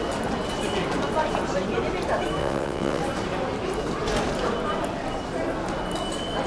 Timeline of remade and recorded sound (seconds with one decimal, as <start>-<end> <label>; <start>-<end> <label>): 0.0-2.4 recorded; 2.4-3.0 remade; 3.0-6.5 recorded